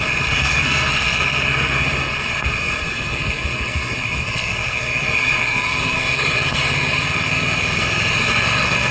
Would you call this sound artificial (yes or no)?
yes